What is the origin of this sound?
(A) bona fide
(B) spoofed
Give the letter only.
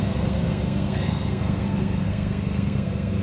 B